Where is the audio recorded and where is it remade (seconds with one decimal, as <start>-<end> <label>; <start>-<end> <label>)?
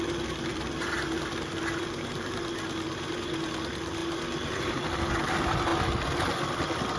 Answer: 0.0-0.5 recorded; 0.5-3.1 remade; 3.1-7.0 recorded